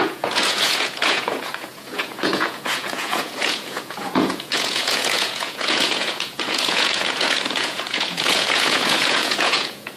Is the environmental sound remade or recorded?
remade